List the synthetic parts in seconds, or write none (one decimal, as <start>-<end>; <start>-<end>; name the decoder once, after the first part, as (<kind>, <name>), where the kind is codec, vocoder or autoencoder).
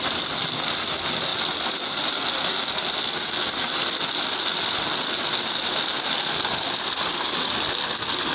none